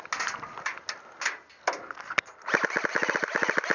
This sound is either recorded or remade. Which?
recorded